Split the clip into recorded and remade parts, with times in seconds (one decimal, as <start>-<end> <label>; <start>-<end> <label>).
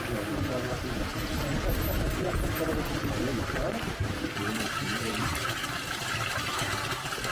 0.0-1.5 remade; 1.5-3.1 recorded; 3.1-7.3 remade